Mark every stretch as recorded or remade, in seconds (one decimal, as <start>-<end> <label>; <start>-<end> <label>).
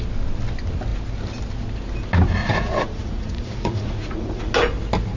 0.0-2.4 recorded; 2.4-4.5 remade; 4.5-5.2 recorded